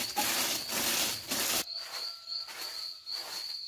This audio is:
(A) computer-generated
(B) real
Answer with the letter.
B